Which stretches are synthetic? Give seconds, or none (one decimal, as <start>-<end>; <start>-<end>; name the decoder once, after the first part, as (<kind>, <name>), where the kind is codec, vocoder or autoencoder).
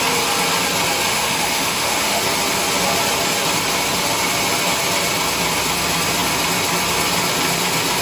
1.1-2.2 (autoencoder, DAC-VAE)